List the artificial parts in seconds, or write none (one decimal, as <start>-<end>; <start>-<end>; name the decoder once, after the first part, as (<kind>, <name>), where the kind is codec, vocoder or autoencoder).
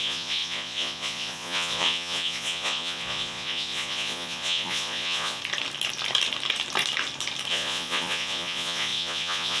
0.0-5.4 (vocoder, Vocos); 7.5-9.6